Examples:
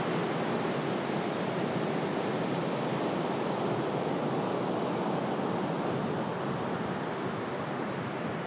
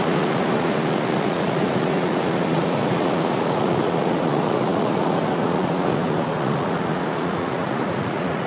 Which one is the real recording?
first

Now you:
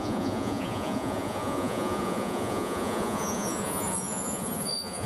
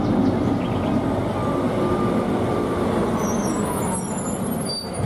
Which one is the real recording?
second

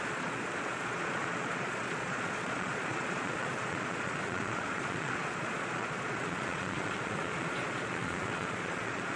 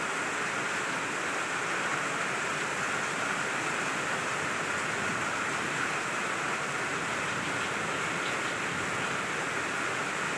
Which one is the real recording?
second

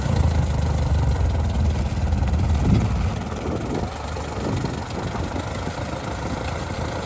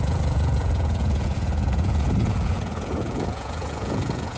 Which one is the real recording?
first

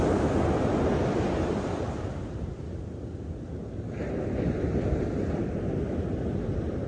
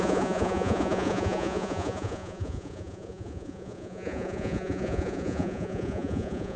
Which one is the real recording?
first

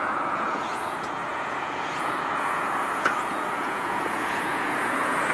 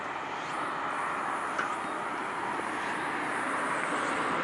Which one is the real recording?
second